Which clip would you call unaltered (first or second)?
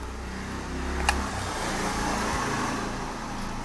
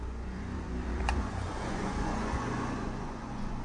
first